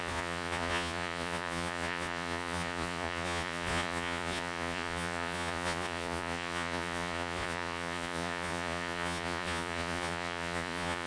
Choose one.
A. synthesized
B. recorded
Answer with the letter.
A